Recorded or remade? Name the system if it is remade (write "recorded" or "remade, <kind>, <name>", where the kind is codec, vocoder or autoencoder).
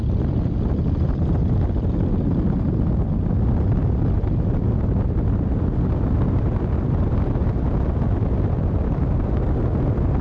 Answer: recorded